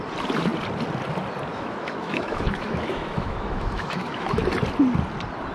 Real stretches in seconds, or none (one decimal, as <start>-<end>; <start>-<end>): 0.0-1.5; 4.4-5.5